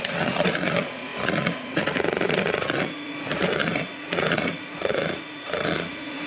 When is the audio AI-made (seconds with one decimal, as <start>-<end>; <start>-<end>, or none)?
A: 0.0-6.3